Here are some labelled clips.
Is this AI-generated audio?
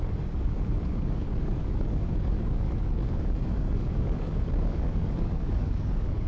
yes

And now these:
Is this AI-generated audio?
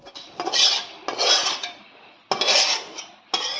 no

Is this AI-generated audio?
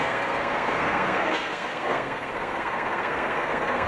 yes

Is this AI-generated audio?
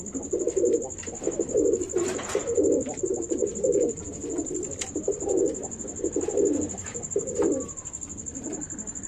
yes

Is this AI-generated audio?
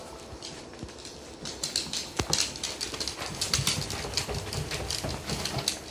no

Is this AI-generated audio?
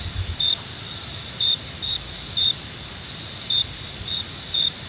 yes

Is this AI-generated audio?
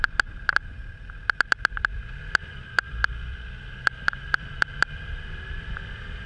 yes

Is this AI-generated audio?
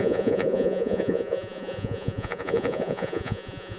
yes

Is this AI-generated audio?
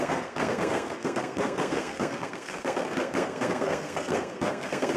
yes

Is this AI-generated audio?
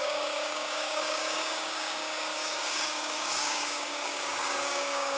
yes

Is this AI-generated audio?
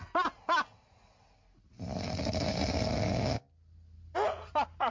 no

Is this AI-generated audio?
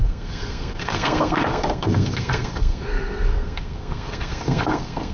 yes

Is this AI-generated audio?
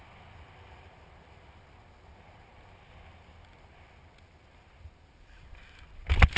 no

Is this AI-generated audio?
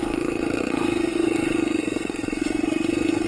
yes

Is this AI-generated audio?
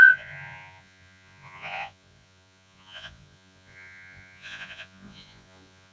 yes